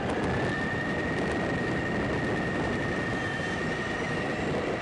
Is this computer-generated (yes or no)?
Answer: no